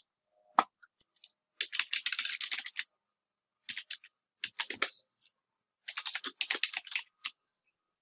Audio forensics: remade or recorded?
recorded